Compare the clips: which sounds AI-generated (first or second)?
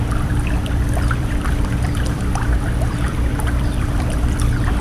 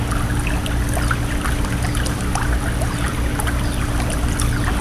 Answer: first